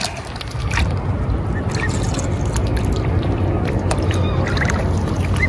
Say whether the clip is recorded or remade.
recorded